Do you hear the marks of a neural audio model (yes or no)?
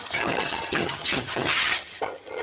yes